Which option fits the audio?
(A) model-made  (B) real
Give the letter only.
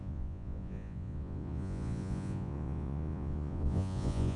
A